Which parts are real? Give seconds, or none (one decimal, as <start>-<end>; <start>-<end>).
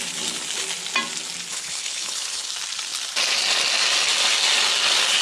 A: 0.0-1.5; 2.5-5.2